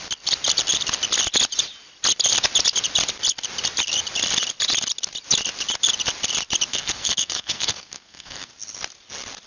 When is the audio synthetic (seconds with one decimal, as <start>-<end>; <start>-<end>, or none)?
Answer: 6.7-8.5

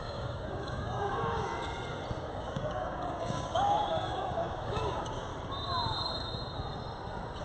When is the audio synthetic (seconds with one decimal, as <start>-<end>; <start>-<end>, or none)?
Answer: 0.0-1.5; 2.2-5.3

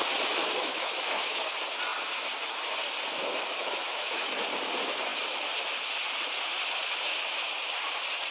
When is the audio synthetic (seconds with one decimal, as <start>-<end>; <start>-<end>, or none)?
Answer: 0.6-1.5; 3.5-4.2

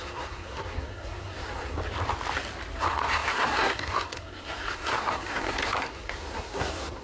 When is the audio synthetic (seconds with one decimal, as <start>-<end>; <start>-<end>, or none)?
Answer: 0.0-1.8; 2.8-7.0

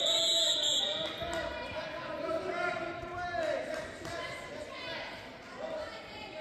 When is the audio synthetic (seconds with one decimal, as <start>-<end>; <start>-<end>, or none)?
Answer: none

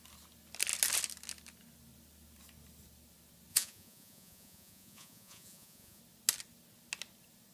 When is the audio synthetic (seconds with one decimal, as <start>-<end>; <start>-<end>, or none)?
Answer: 3.5-6.0

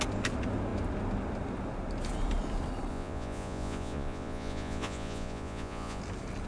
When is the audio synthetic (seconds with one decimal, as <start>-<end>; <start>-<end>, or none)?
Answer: 2.9-6.0